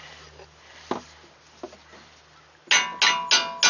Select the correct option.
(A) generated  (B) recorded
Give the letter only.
B